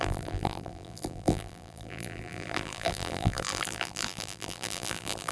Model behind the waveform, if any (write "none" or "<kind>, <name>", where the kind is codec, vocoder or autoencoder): vocoder, BigVGAN v2